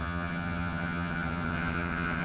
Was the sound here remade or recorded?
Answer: remade